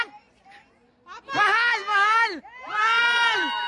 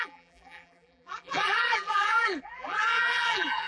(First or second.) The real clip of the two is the first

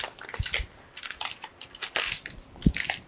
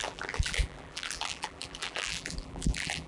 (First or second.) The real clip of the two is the first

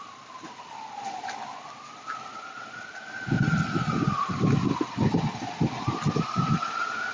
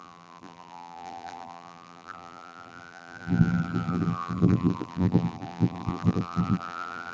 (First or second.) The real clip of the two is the first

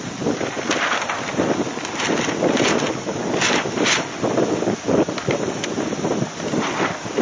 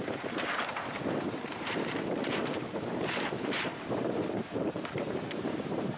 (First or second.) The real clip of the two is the first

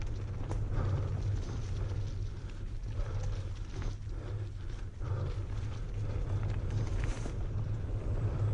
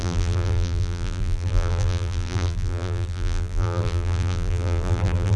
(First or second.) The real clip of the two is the first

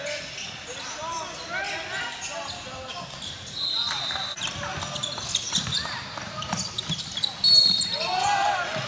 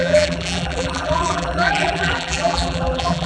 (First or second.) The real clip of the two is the first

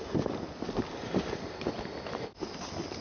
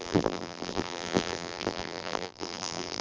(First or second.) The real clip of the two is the first